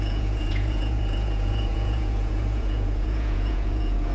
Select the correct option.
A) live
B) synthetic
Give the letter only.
B